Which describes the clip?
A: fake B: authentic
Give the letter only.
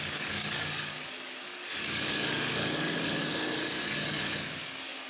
A